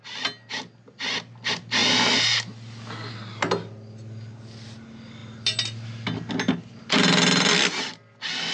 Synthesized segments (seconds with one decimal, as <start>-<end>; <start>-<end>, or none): none